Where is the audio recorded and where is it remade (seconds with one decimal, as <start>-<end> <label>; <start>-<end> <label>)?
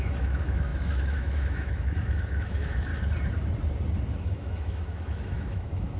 0.0-2.9 remade; 2.9-4.1 recorded; 4.1-6.0 remade